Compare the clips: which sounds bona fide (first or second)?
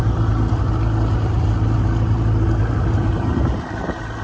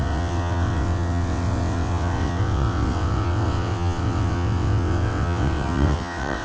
first